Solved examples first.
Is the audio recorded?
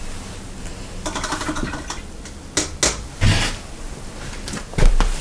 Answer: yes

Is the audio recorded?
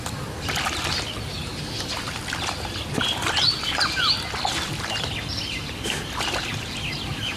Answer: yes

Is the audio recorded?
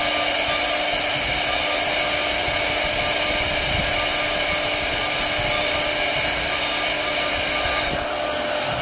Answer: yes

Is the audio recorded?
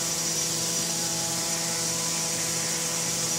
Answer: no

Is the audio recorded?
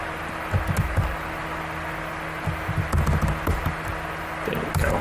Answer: yes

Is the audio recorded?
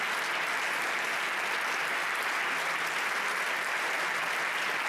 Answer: yes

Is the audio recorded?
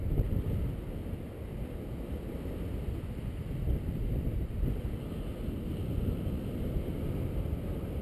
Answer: yes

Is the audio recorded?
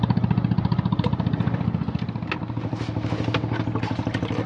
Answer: yes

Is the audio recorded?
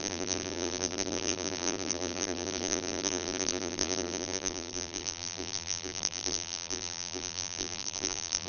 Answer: no